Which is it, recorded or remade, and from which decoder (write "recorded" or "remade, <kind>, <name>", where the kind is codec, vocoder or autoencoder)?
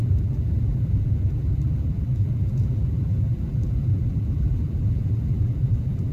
remade, vocoder, BigVGAN v2